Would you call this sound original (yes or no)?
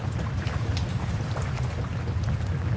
no